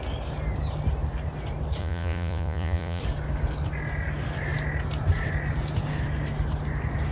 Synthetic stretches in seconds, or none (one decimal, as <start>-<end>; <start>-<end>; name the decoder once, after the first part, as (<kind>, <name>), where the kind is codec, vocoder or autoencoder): 1.8-3.0 (vocoder, Vocos)